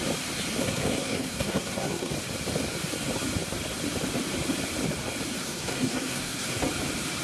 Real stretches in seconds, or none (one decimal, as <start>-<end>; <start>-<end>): 0.0-0.6; 2.1-5.4; 6.6-7.2